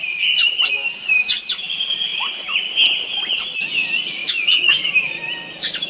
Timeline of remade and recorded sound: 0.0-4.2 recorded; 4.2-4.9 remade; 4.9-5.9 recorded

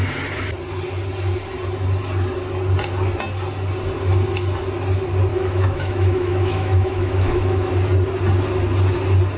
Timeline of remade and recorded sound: 0.0-5.3 recorded; 5.3-7.7 remade; 7.7-9.4 recorded

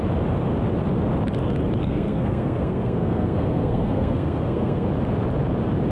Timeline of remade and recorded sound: 0.0-1.8 recorded; 1.8-4.9 remade; 4.9-5.9 recorded

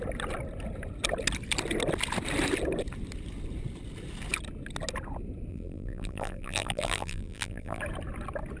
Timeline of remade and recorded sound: 0.0-5.5 recorded; 5.5-7.8 remade; 7.8-8.6 recorded